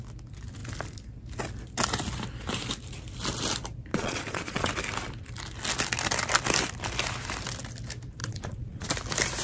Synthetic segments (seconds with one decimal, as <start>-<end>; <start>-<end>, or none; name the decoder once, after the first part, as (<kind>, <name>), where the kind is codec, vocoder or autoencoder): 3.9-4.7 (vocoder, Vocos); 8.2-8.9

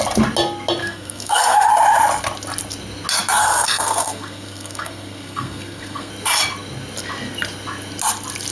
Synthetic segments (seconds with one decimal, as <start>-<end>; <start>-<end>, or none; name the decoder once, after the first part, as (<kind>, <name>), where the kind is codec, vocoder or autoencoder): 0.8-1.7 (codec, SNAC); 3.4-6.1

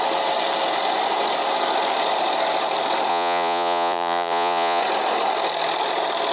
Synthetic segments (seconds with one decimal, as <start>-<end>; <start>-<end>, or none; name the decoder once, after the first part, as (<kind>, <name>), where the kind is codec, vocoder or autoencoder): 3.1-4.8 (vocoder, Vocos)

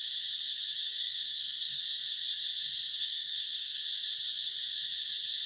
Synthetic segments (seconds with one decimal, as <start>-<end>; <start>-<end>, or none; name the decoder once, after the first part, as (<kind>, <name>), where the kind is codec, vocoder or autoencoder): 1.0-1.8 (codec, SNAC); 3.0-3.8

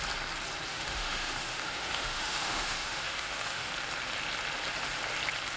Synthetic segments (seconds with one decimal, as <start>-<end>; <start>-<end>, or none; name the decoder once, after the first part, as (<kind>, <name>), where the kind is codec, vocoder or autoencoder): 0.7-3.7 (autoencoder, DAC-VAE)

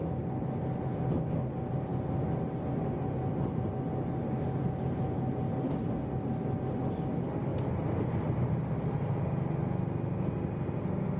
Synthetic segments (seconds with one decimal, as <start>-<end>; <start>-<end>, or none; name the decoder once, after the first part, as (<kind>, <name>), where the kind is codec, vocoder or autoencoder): none

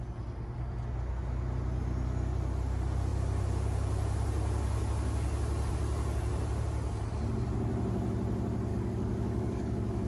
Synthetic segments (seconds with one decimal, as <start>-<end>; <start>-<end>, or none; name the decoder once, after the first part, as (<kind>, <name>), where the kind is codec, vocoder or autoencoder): 8.7-10.1 (codec, DAC)

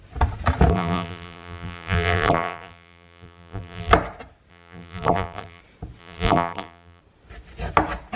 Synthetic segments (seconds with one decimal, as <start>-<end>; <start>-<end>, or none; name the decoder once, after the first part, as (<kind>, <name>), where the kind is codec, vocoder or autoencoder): 0.7-3.9 (vocoder, BigVGAN v2); 4.5-5.6; 6.0-7.0